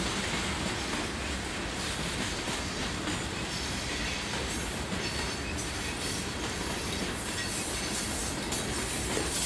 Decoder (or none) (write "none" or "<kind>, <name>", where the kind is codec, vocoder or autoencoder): none